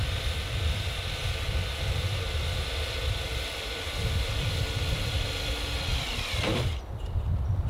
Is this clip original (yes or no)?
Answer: no